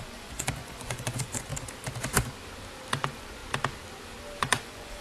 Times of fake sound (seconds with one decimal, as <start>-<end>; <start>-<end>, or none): 0.0-1.5; 2.9-3.4; 4.4-5.0